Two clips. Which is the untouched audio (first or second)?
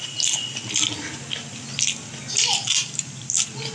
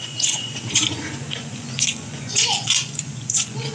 first